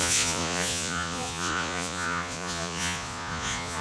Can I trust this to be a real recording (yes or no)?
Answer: no